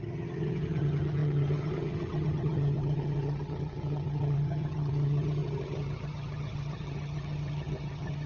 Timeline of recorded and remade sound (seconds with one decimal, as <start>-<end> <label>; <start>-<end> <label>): 0.0-8.3 remade